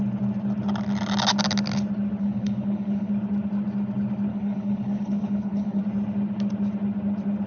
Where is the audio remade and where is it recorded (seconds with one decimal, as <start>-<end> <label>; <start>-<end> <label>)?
0.0-2.2 recorded; 2.2-3.1 remade; 3.1-4.3 recorded; 4.3-5.8 remade; 5.8-7.5 recorded